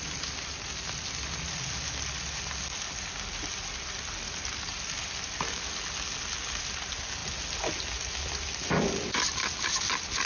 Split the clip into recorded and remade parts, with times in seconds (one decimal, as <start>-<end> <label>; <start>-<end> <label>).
0.0-10.3 recorded